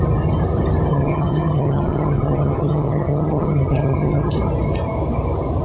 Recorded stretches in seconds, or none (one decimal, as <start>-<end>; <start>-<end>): 0.0-0.9; 4.3-5.6